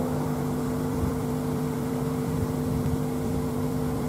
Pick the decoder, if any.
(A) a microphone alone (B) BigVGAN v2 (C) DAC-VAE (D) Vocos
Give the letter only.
B